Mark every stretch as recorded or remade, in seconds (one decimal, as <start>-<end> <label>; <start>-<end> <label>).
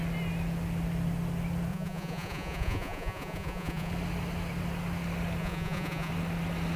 0.0-1.7 recorded; 1.7-3.9 remade; 3.9-5.4 recorded; 5.4-6.1 remade; 6.1-6.8 recorded